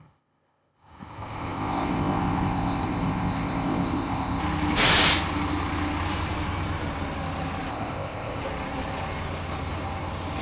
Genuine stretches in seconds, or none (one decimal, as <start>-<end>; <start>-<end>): 4.4-7.7; 8.4-10.4